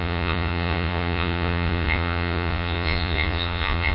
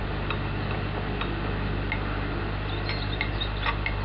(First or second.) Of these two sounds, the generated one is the first